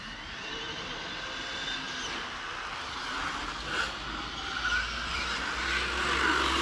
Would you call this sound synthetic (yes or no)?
no